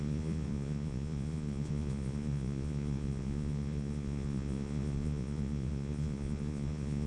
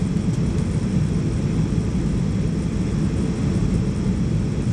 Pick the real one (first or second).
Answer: second